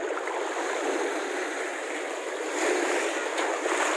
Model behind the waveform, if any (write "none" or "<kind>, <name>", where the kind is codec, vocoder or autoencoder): none